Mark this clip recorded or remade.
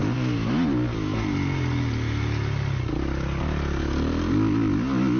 recorded